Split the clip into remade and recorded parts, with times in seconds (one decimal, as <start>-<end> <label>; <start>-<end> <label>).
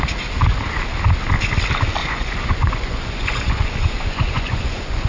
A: 0.0-2.0 recorded; 2.0-5.1 remade